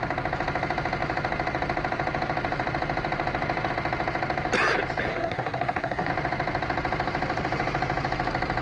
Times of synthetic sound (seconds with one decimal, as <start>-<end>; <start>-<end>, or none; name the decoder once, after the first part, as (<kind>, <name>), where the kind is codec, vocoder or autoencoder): 5.1-6.1 (codec, SNAC)